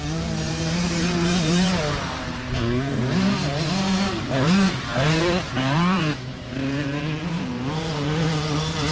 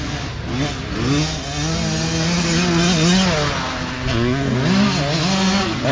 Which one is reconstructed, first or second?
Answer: first